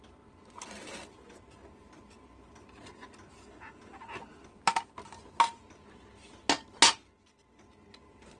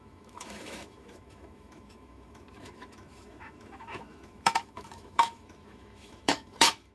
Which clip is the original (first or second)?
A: first